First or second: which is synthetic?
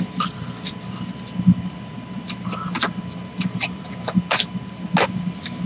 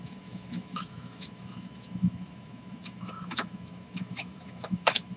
second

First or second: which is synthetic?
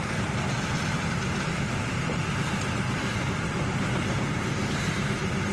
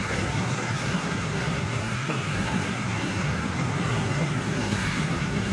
second